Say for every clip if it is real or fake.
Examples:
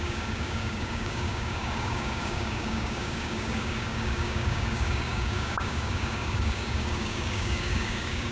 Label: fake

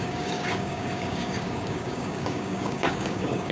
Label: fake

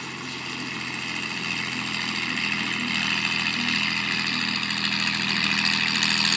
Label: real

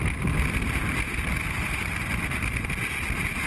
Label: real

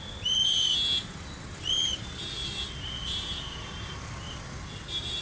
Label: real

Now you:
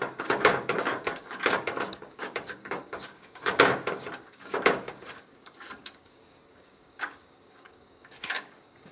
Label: fake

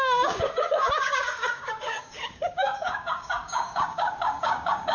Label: fake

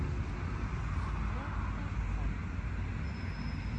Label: real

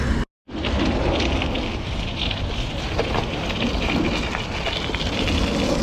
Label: real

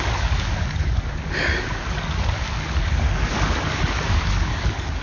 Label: fake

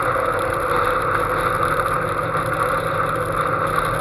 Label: real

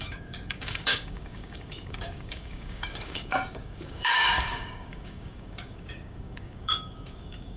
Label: fake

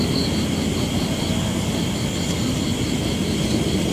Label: real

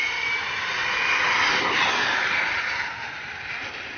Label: real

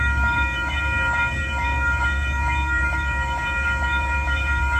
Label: fake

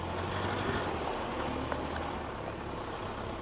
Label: real